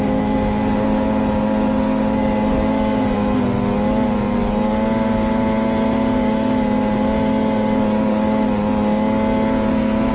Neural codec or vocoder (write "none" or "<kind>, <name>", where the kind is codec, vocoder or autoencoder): none